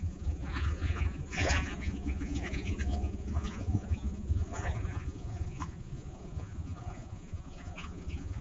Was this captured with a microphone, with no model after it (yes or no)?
no